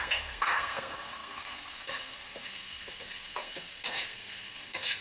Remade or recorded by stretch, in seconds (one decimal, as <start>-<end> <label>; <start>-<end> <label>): 0.0-5.0 remade